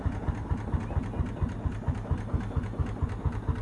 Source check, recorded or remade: recorded